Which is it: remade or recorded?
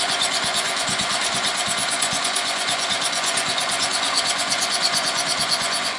remade